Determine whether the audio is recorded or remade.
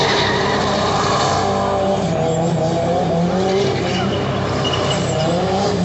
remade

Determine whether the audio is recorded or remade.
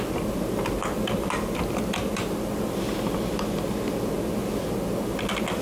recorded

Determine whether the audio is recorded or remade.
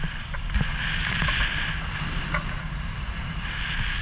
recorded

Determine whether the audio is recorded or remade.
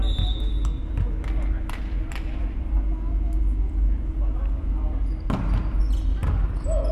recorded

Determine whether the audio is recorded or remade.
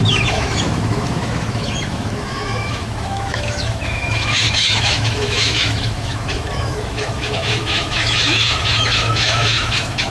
remade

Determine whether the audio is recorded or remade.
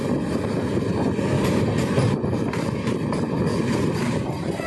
remade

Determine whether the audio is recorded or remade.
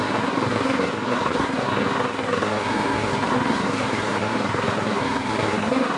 remade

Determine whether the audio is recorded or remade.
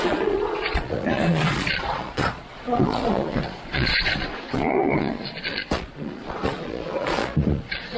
remade